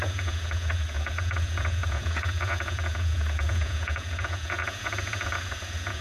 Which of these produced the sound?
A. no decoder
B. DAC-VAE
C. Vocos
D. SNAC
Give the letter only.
C